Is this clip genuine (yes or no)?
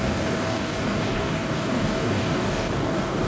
no